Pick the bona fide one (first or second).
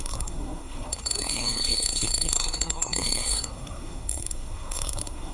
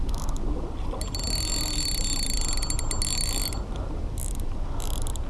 second